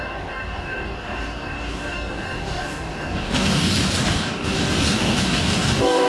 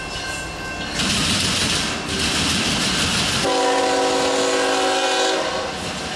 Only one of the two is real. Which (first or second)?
second